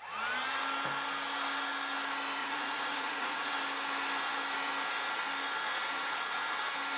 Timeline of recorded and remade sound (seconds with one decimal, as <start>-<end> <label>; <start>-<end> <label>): 0.0-2.4 recorded; 2.4-3.5 remade; 3.5-7.0 recorded